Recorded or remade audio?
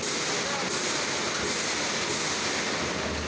recorded